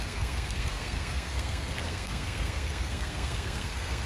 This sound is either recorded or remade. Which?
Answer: remade